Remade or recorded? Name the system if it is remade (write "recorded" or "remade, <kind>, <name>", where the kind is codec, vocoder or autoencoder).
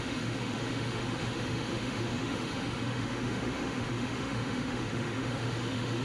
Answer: remade, autoencoder, DAC-VAE